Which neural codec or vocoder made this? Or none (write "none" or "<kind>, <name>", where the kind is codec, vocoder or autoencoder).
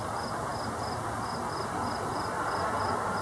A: none